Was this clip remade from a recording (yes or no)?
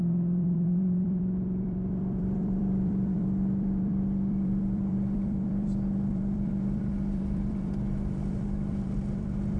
yes